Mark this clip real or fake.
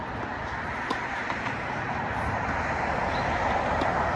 real